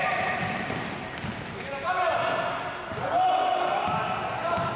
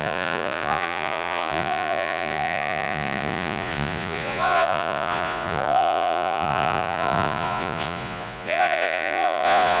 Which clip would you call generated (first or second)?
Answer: second